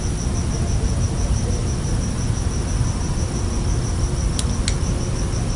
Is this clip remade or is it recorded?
recorded